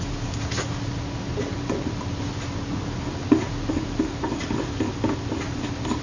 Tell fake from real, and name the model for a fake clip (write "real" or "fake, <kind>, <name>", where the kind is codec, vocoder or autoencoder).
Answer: real